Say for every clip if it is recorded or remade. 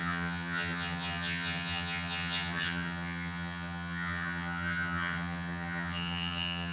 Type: remade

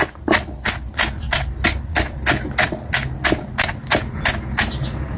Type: recorded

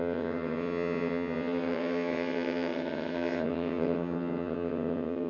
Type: remade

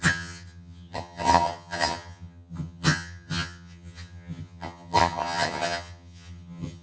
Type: remade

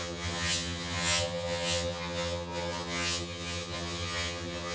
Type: remade